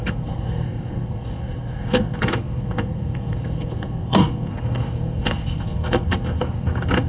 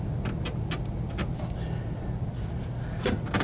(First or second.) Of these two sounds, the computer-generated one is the first